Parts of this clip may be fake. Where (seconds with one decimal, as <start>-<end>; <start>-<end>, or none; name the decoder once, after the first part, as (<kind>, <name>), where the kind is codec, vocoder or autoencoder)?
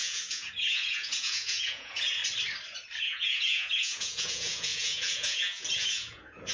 0.0-2.2 (vocoder, Vocos); 3.0-6.5